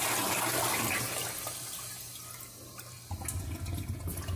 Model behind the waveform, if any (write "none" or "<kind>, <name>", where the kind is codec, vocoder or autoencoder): none